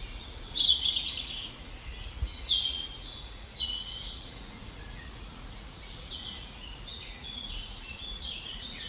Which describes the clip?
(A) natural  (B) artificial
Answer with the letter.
B